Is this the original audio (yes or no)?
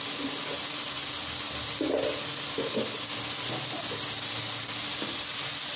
yes